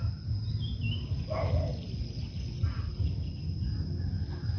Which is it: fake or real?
real